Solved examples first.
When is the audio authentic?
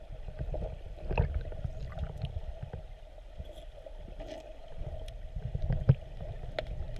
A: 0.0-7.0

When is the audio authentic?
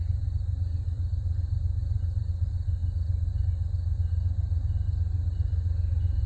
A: 0.0-6.3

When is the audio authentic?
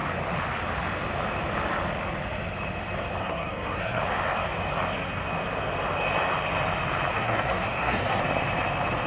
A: 0.0-3.2; 4.0-7.1; 8.2-9.1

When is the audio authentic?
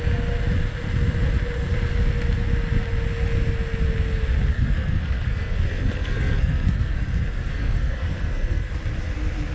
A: 0.0-4.5; 7.1-7.5; 8.7-9.5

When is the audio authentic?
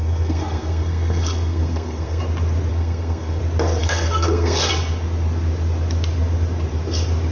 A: 2.2-2.7; 3.4-3.8; 4.7-7.3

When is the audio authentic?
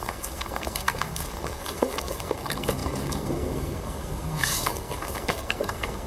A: none